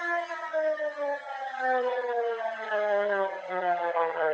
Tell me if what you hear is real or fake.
fake